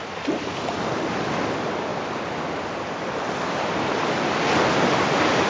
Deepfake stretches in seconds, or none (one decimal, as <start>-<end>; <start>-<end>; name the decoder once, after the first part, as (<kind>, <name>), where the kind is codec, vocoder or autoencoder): none

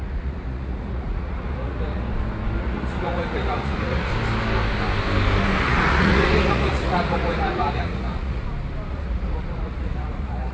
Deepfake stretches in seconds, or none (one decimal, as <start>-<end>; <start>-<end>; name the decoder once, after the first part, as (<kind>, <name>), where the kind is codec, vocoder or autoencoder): 0.0-2.1 (vocoder, Vocos); 2.6-4.1; 5.6-8.4; 8.9-10.5